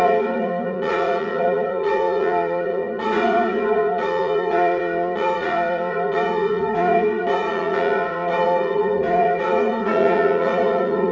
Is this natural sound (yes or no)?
no